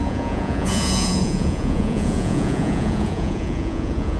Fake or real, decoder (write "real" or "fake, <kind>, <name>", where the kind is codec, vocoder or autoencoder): fake, vocoder, Vocos